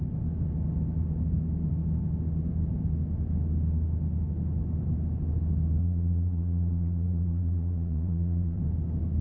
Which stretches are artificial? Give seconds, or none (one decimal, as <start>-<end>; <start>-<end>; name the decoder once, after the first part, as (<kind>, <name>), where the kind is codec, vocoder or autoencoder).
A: 5.8-8.6 (vocoder, Vocos)